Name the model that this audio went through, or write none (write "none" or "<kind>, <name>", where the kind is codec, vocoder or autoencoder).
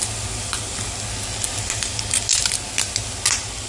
none